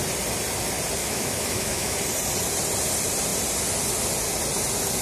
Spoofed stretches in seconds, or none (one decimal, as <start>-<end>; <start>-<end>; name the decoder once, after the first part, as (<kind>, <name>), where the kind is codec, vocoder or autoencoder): 1.0-2.0 (autoencoder, DAC-VAE)